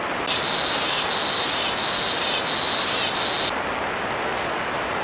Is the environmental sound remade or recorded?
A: recorded